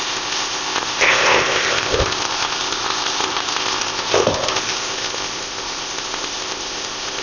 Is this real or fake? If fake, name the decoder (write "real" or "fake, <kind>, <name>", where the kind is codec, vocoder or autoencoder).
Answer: fake, codec, ZipCodec